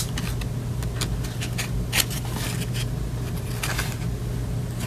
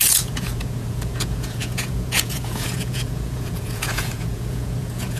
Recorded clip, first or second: first